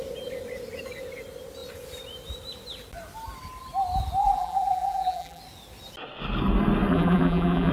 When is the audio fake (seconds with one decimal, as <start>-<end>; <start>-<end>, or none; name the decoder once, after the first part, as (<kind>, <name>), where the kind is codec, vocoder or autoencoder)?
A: 4.2-5.4 (vocoder, BigVGAN v2); 6.9-7.7